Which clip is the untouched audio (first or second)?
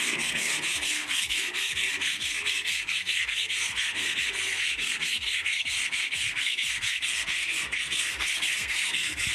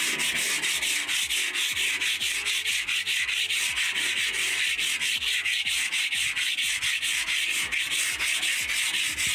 second